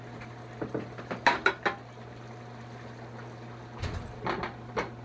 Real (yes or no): yes